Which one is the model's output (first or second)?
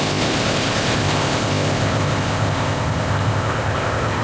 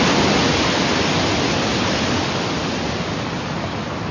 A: first